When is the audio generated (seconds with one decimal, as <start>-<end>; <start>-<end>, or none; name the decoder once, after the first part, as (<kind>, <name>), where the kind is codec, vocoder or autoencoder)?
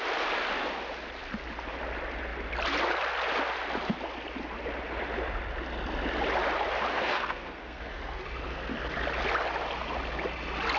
6.9-8.0 (codec, SNAC)